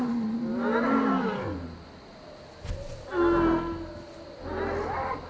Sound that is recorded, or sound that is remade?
recorded